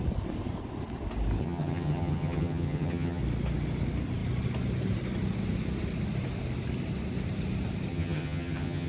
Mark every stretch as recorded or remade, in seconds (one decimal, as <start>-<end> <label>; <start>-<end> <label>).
0.0-1.4 recorded; 1.4-3.2 remade; 3.2-7.9 recorded; 7.9-8.9 remade